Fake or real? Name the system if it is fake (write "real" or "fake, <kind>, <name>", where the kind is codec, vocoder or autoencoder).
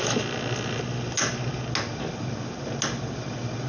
real